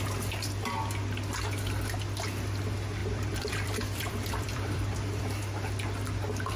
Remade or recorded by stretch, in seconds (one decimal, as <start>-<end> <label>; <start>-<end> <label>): 0.0-3.0 recorded; 3.0-5.4 remade; 5.4-6.6 recorded